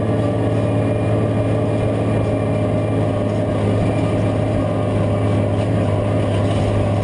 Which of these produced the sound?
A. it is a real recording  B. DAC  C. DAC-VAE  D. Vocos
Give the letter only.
A